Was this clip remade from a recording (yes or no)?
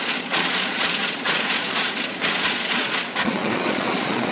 yes